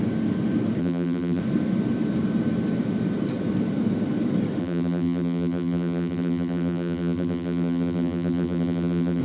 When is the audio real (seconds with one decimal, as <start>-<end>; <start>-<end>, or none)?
0.0-0.8; 1.4-4.6